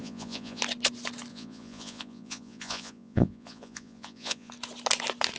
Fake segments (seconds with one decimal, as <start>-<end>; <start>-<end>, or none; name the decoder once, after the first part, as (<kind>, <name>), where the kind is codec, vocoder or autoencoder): 0.0-0.6 (vocoder, Vocos); 1.3-4.5